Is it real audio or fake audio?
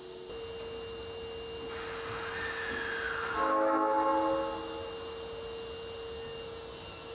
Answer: real